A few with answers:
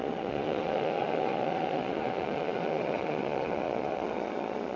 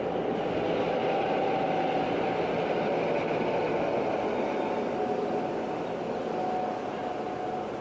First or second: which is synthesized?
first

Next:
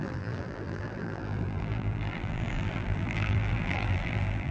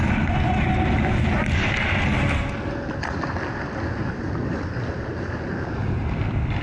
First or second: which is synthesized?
first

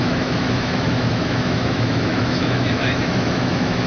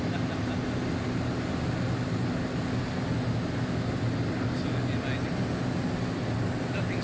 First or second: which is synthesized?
first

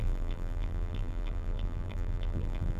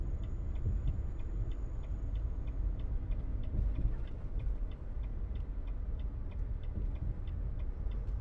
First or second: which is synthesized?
first